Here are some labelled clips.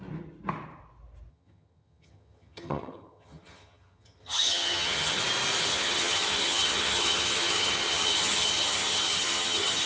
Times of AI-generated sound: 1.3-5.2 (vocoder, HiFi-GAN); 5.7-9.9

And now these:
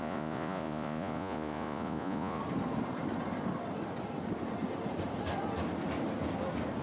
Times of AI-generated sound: 0.0-2.4 (vocoder, Vocos)

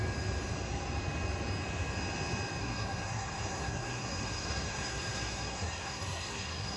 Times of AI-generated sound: 2.6-6.8 (codec, SNAC)

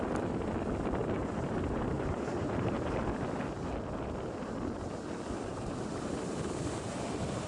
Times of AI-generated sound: 1.0-3.0 (vocoder, BigVGAN v2); 5.5-6.1

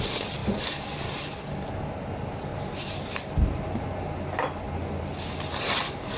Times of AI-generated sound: none